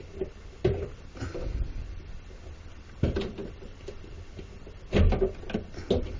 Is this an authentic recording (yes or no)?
yes